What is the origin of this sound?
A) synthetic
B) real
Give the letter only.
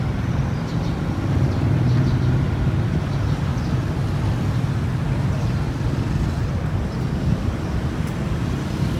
B